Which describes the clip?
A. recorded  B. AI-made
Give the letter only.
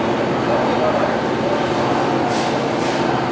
A